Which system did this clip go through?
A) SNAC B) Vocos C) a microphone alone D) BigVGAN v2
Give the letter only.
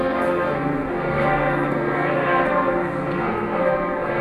A